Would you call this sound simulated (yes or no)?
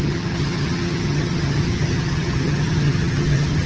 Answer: yes